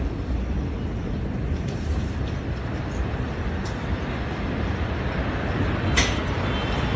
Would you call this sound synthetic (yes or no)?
no